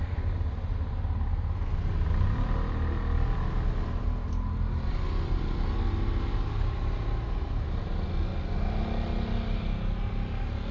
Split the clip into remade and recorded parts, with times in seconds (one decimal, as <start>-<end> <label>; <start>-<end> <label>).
0.0-10.7 recorded